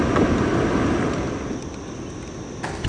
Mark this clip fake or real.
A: real